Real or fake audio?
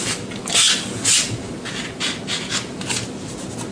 real